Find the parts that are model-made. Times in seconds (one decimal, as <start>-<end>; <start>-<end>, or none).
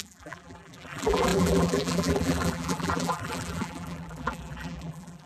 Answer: 0.0-5.3